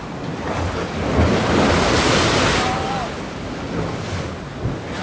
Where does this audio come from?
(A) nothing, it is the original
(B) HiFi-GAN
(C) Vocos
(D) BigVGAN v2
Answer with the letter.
A